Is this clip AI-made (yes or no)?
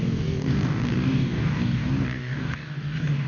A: yes